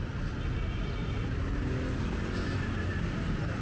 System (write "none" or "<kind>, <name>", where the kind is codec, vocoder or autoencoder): none